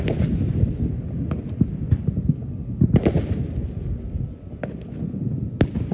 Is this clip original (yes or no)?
yes